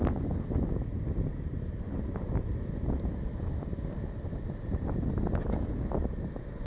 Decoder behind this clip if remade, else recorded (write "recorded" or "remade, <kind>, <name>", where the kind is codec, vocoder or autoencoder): recorded